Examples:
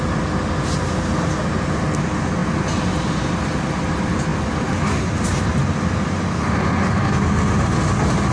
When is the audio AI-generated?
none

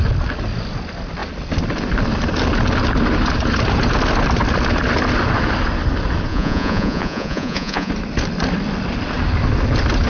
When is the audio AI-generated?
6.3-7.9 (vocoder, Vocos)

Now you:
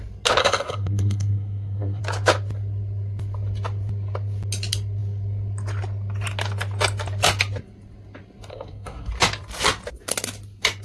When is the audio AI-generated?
0.4-2.0 (codec, SNAC); 8.5-9.1

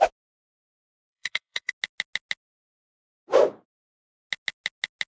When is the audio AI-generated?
0.6-1.7 (codec, SNAC)

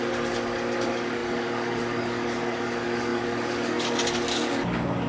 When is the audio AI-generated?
0.0-5.1 (codec, DAC)

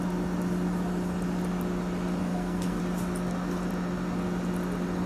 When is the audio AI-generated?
2.2-2.8 (codec, SNAC)